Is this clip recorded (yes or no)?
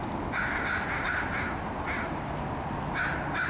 yes